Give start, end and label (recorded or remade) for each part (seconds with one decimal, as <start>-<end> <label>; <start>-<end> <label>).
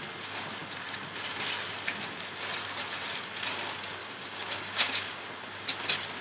0.0-4.0 recorded; 4.0-5.2 remade; 5.2-6.2 recorded